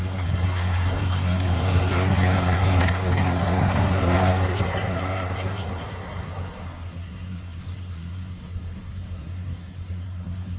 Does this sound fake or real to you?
fake